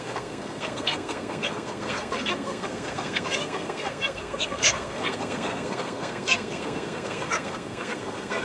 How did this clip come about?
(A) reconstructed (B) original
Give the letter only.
A